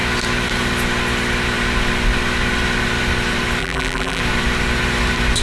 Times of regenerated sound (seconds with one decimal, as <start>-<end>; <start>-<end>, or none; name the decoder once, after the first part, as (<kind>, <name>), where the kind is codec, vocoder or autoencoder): 3.6-4.2 (vocoder, BigVGAN v2)